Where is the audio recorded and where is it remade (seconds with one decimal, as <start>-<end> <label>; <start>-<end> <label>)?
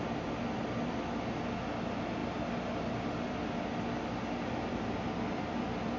0.0-6.0 recorded